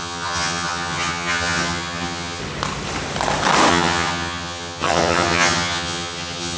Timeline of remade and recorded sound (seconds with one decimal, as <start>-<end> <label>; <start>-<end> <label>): 0.0-2.4 remade; 2.4-3.7 recorded; 3.7-6.6 remade

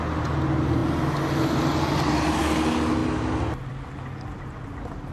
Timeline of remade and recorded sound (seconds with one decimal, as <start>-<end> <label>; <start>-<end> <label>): 0.0-5.1 recorded

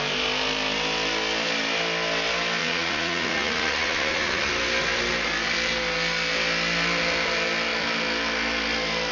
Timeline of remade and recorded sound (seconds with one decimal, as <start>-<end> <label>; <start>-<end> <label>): 0.0-2.6 recorded; 2.6-4.5 remade; 4.5-9.1 recorded

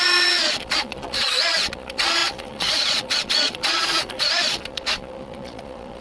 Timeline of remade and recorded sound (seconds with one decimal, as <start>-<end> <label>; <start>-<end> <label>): 0.0-6.0 remade

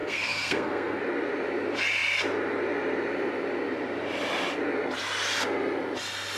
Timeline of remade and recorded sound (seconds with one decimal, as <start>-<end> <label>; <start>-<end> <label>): 0.0-1.0 remade; 1.0-6.4 recorded

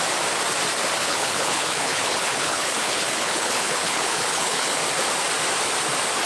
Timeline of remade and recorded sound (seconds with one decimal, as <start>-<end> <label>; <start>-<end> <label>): 0.0-1.0 recorded; 1.0-4.8 remade; 4.8-6.3 recorded

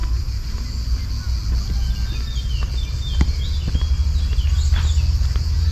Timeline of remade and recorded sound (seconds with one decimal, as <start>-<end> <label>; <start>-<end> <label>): 0.0-1.1 remade; 1.1-5.7 recorded